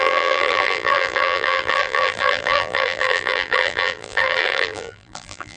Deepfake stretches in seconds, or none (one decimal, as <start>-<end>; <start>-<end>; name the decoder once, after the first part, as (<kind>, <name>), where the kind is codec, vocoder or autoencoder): 0.0-5.6 (vocoder, BigVGAN v2)